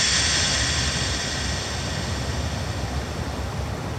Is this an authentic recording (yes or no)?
yes